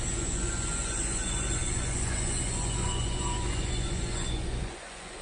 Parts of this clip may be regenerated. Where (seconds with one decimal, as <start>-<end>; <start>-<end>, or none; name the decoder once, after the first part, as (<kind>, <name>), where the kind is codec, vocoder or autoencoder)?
0.0-5.2 (vocoder, Vocos)